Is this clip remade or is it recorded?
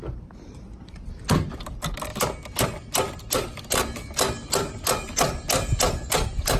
recorded